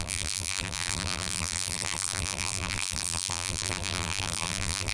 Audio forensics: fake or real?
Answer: fake